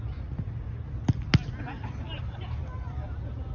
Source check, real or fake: real